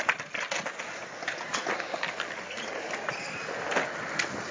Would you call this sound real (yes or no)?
yes